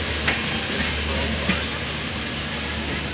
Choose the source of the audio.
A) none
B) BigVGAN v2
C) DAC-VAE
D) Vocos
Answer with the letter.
A